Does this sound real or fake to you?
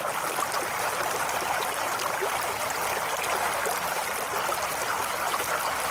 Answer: real